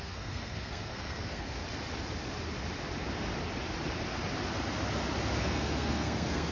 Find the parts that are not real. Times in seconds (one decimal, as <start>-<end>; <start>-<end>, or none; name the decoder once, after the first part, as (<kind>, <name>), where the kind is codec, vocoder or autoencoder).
0.0-1.6 (codec, SNAC); 5.4-6.5